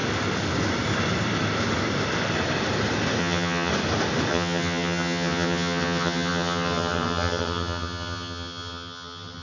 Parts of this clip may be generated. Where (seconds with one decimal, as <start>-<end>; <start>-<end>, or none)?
3.2-3.7; 4.3-9.4